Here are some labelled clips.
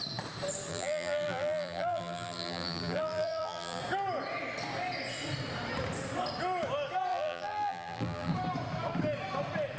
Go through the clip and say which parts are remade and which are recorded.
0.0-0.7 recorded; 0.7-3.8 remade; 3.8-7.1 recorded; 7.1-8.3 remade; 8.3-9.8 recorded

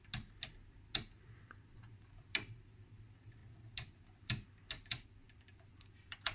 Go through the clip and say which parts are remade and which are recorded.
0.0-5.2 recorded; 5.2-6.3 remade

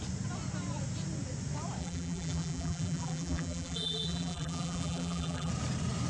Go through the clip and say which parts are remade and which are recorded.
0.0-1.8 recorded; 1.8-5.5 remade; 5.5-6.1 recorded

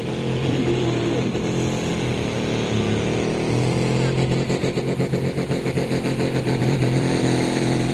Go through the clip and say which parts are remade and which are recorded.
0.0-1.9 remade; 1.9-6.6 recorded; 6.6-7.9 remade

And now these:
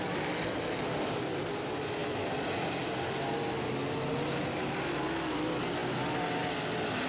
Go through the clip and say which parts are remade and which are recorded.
0.0-2.0 recorded; 2.0-3.7 remade; 3.7-7.1 recorded

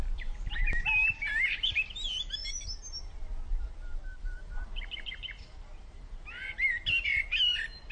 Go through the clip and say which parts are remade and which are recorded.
0.0-2.4 remade; 2.4-4.2 recorded; 4.2-7.9 remade

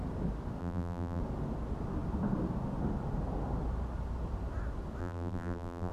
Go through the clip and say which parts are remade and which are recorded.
0.0-0.6 recorded; 0.6-1.2 remade; 1.2-5.0 recorded; 5.0-5.9 remade

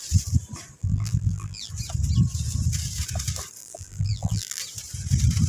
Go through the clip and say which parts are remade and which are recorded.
0.0-0.8 recorded; 0.8-1.7 remade; 1.7-3.6 recorded; 3.6-4.6 remade; 4.6-5.5 recorded